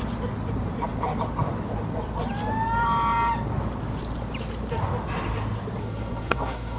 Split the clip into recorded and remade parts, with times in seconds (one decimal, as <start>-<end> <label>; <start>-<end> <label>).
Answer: 0.0-5.8 recorded; 5.8-6.8 remade